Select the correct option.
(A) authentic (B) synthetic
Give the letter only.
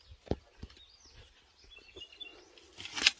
A